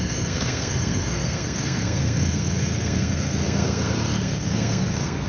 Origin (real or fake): fake